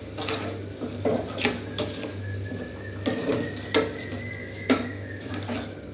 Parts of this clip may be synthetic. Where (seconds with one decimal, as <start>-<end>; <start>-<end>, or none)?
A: 4.4-5.3